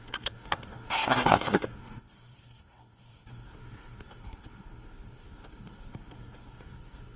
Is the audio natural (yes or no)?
no